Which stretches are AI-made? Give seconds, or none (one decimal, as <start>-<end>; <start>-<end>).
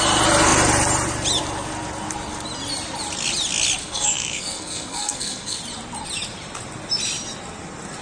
3.8-5.6